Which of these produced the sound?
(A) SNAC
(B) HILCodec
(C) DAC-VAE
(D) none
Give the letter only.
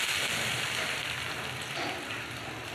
D